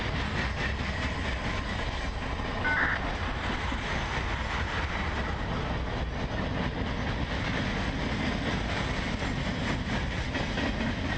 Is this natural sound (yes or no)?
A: yes